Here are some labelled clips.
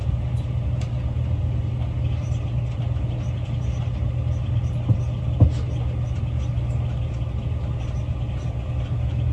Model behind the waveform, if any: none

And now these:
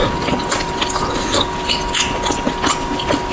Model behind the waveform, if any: none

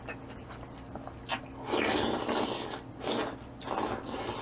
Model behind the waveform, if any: none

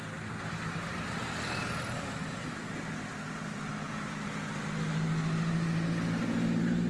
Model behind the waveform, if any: none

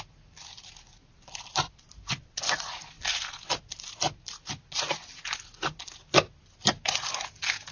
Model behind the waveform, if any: none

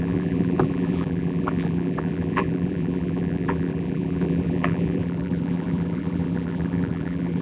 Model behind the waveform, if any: vocoder, BigVGAN v2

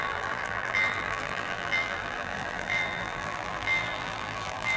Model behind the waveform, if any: vocoder, BigVGAN v2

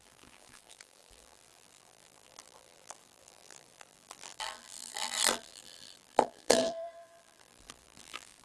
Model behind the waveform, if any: vocoder, BigVGAN v2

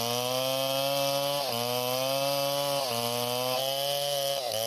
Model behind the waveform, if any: none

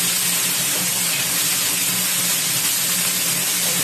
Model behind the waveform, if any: none